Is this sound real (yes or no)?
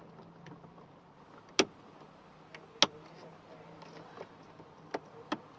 yes